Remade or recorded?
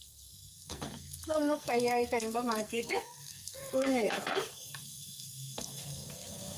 remade